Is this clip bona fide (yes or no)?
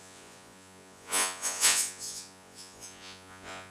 no